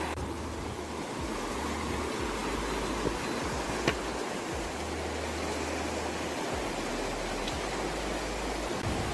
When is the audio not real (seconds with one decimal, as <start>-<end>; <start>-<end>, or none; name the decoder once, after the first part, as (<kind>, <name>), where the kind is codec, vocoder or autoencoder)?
none